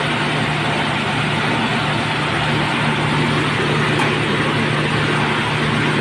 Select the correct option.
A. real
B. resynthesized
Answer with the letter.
A